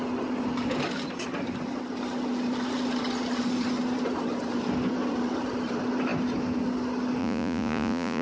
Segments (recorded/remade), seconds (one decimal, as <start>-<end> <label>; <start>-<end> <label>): 0.0-7.2 recorded; 7.2-8.2 remade

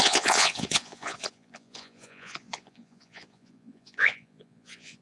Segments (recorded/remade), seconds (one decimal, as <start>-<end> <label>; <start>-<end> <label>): 0.0-5.0 remade

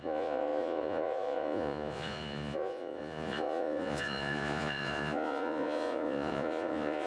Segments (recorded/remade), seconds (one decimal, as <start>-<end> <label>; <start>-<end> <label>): 0.0-7.1 remade

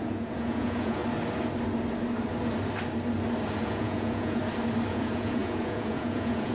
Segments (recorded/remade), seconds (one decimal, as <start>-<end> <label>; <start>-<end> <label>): 0.0-1.0 remade; 1.0-3.6 recorded; 3.6-4.4 remade; 4.4-4.9 recorded; 4.9-6.5 remade

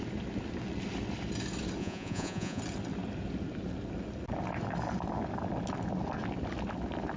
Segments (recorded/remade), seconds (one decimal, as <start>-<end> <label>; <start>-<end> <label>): 0.0-1.8 recorded; 1.8-2.6 remade; 2.6-7.2 recorded